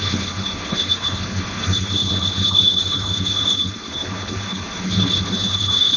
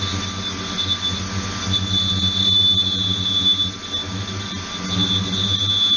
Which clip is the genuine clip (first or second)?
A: second